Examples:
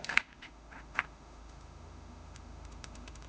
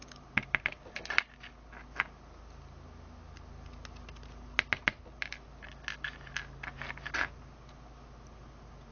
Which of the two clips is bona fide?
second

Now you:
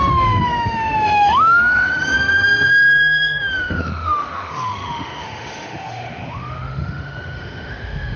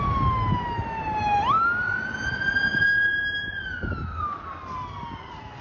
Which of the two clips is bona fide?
second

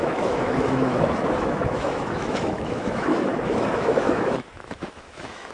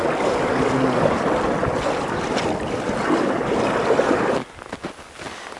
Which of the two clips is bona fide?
second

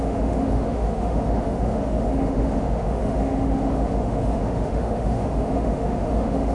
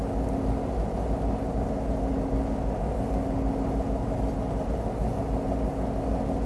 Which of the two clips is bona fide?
second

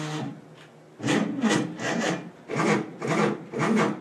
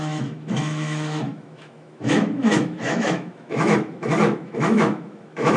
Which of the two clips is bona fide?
first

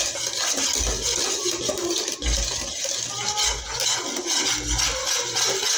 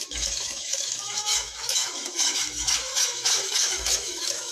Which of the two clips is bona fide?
first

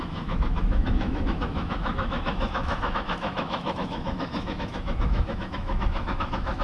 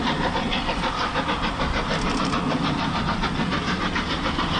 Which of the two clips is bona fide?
second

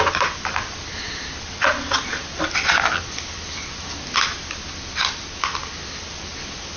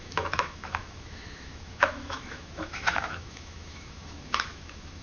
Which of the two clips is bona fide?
first